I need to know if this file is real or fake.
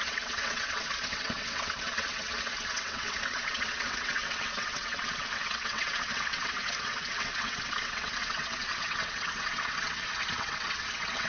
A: fake